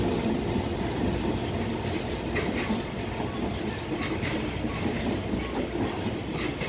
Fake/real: real